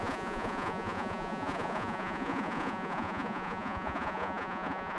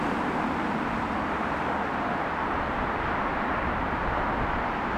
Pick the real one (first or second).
second